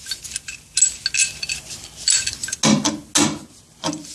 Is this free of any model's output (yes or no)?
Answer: yes